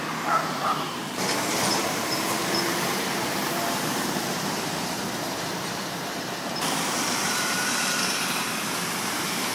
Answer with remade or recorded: remade